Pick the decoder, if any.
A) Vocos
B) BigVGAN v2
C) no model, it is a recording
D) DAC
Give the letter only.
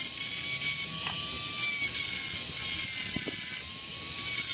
C